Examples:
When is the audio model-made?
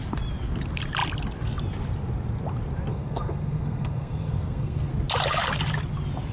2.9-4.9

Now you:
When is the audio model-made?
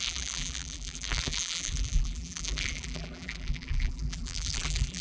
0.0-5.0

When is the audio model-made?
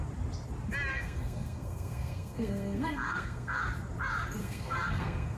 0.9-3.6; 4.4-5.4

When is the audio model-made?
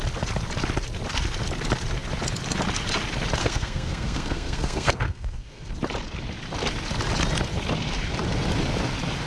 3.4-5.7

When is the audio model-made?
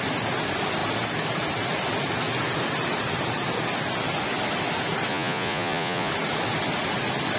5.1-6.1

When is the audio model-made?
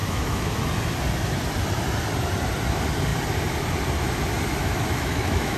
0.0-0.6; 4.6-5.6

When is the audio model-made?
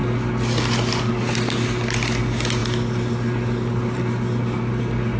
none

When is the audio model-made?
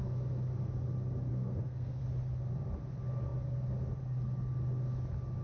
1.3-2.0